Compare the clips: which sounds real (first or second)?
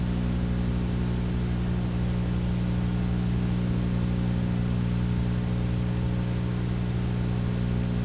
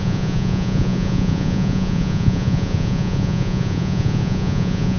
first